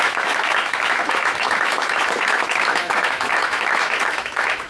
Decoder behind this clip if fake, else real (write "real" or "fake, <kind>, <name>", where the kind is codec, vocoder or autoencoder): fake, autoencoder, DAC-VAE